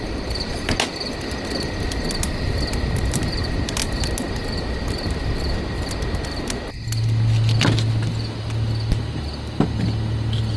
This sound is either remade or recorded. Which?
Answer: recorded